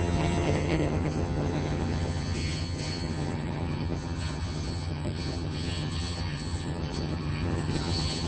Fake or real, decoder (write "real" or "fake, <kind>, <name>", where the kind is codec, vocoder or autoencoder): fake, vocoder, HiFi-GAN